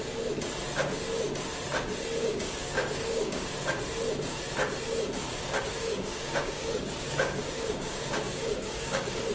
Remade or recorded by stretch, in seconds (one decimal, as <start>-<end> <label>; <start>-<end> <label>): 0.0-2.2 recorded; 2.2-3.5 remade; 3.5-5.2 recorded; 5.2-9.3 remade